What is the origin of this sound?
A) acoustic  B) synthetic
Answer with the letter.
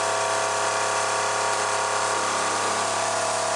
A